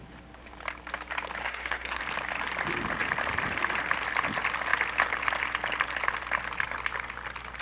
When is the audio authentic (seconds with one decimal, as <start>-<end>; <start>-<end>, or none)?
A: 0.0-1.4; 2.0-7.6